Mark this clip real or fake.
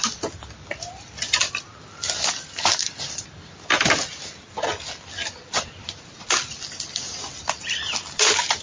real